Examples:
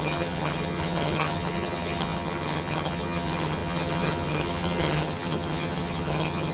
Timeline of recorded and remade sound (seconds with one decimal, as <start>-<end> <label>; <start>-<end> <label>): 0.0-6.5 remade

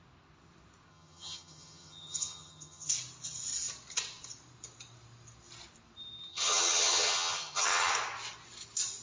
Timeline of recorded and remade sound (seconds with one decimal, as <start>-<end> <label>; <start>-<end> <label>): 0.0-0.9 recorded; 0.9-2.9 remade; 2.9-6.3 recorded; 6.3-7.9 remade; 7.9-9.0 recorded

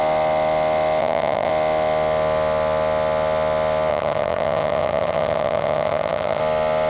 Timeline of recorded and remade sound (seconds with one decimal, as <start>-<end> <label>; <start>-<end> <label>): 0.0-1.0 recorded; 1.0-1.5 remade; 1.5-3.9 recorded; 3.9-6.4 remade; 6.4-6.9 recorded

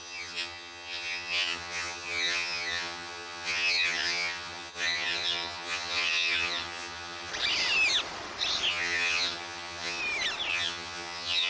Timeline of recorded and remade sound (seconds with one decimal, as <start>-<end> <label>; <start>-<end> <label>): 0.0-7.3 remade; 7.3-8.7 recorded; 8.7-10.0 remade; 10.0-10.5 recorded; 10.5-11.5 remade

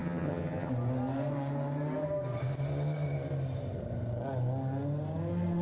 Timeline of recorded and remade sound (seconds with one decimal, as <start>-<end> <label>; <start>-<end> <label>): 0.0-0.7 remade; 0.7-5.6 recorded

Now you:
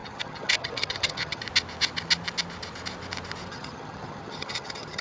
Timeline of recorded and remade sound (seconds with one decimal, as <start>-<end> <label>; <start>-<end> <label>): 0.0-1.4 remade; 1.4-3.5 recorded; 3.5-5.0 remade

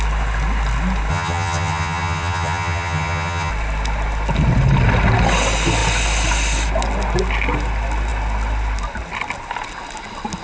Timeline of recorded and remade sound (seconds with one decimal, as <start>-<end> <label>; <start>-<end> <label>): 0.0-1.1 recorded; 1.1-3.5 remade; 3.5-10.4 recorded